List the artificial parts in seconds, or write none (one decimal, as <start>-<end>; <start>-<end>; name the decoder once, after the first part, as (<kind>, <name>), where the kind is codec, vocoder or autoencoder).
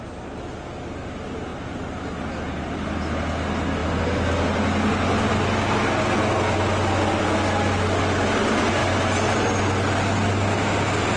none